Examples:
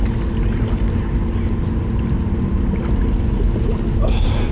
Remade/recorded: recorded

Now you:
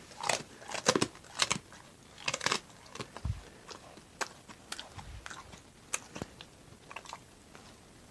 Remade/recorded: recorded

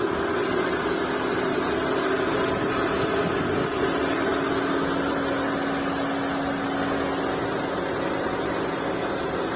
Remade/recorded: recorded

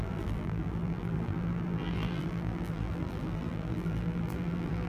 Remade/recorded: remade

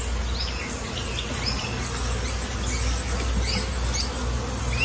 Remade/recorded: recorded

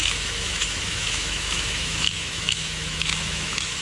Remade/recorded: remade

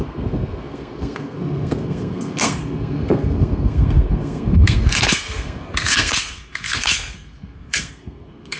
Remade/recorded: remade